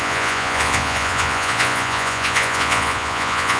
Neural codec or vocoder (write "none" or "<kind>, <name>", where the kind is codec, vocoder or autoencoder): vocoder, Vocos